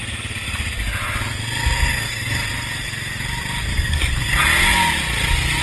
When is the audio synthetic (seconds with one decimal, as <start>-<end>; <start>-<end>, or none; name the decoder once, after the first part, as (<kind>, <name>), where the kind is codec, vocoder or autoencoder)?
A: 1.9-2.5 (codec, DAC); 3.7-4.3

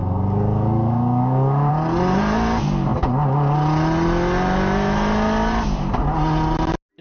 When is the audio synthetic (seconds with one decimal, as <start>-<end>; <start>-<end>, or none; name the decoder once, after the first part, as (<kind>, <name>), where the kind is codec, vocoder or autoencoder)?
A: 0.0-1.7 (codec, DAC)

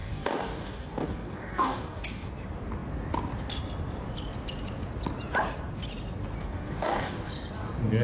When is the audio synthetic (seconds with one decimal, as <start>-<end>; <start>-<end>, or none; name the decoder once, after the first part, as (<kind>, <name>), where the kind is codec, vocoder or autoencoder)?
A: 0.0-2.3 (codec, DAC); 6.4-7.3

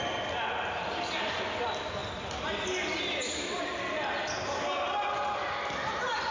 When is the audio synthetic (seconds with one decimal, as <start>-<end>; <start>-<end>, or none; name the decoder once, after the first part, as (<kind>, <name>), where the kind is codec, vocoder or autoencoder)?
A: none

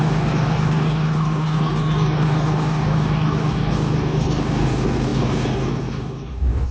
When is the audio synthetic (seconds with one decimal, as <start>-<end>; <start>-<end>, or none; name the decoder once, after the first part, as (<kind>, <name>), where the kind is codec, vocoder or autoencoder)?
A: 0.0-6.7 (codec, DAC)

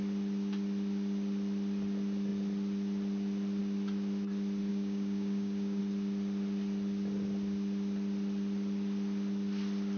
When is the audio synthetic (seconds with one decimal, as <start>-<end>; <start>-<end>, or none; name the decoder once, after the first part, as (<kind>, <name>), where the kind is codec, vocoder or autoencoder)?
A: 4.7-5.8 (codec, DAC)

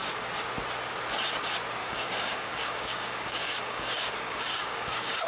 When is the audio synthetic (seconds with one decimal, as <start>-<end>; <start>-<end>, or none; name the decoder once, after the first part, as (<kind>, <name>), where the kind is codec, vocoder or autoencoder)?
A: 1.8-5.3 (codec, DAC)

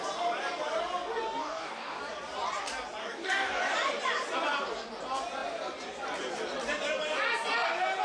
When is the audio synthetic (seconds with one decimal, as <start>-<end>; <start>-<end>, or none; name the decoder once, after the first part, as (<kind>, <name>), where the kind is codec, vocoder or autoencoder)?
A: 1.4-2.0 (codec, DAC); 3.0-3.6